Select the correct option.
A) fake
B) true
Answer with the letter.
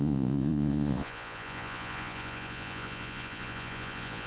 A